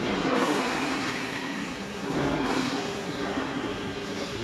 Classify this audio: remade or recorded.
remade